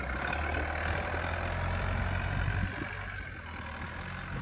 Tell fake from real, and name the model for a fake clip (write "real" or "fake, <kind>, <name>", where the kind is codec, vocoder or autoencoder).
real